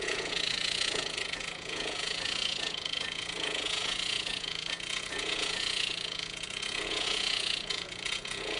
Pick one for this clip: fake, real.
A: fake